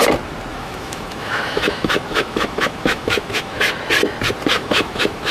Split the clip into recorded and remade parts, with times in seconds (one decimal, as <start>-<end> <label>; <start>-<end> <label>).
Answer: 0.0-0.5 recorded; 0.5-3.7 remade; 3.7-4.5 recorded; 4.5-5.3 remade